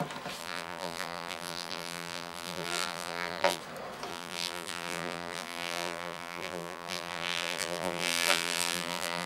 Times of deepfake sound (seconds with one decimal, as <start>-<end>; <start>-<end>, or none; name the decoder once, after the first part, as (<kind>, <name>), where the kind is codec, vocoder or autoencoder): 0.4-3.6 (vocoder, BigVGAN v2); 4.1-9.3